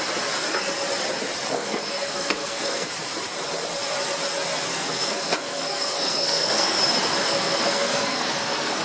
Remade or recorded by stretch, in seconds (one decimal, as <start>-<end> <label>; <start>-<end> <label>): 0.0-1.5 recorded; 1.5-2.9 remade; 2.9-4.7 recorded; 4.7-6.8 remade; 6.8-7.2 recorded; 7.2-8.8 remade